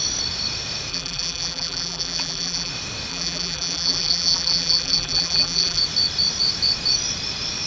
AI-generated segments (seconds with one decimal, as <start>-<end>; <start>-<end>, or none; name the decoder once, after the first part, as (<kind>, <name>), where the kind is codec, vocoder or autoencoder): 0.9-2.7 (vocoder, BigVGAN v2); 3.1-5.8